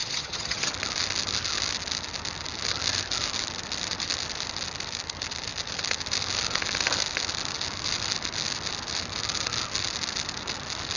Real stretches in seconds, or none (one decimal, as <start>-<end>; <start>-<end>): 0.7-11.0